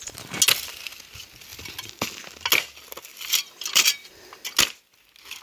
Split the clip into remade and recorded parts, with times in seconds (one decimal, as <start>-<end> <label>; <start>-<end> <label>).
0.0-3.1 recorded; 3.1-4.1 remade; 4.1-5.4 recorded